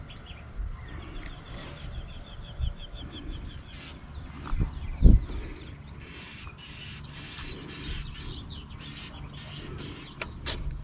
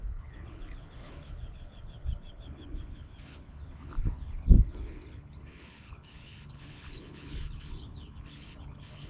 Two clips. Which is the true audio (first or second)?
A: first